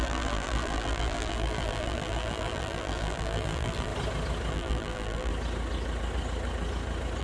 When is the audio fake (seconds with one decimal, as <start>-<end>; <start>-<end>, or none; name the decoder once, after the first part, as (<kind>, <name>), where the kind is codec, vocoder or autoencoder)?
0.0-3.9 (vocoder, BigVGAN v2); 4.5-5.3